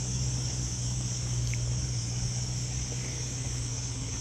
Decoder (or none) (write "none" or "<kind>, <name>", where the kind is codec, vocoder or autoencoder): codec, DAC